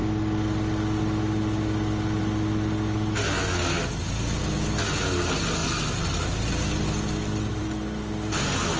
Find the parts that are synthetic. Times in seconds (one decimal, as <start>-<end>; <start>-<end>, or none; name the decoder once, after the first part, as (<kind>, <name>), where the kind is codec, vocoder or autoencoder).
none